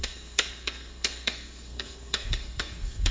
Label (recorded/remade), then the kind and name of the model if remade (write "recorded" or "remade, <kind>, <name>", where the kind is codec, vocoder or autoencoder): remade, codec, SNAC